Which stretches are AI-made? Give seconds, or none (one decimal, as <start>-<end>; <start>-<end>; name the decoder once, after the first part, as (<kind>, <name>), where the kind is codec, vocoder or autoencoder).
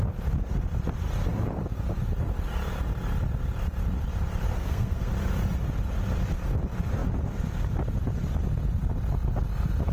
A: 4.5-5.1 (codec, SNAC)